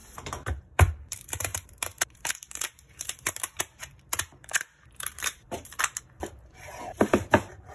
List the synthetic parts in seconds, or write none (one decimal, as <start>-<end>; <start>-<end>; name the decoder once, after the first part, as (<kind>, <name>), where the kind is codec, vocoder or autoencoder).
0.0-7.7 (vocoder, BigVGAN v2)